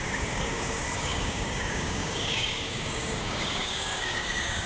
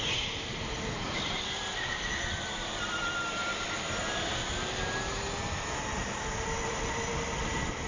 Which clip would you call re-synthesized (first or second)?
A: first